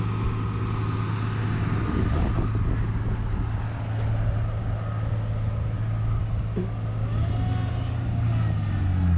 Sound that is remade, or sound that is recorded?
recorded